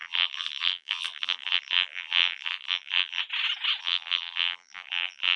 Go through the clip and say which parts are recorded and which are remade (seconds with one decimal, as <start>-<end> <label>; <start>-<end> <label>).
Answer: 0.0-3.2 remade; 3.2-3.8 recorded; 3.8-5.4 remade